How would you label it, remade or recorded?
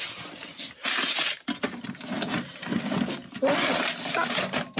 recorded